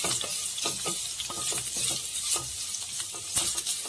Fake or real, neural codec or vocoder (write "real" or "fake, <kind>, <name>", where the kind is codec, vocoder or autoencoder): real